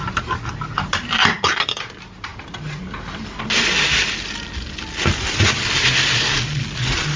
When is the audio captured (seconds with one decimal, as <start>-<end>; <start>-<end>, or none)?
0.0-7.2